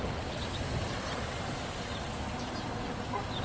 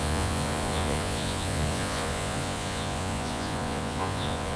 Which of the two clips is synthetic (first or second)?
second